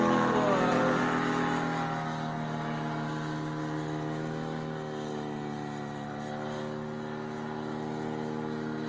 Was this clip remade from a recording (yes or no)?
no